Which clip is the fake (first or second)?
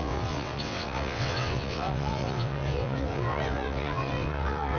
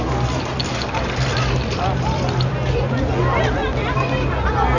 first